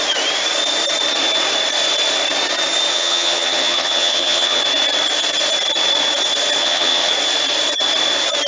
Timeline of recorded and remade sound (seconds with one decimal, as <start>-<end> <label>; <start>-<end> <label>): 0.0-2.9 recorded; 2.9-4.6 remade; 4.6-6.6 recorded; 6.6-7.1 remade; 7.1-8.5 recorded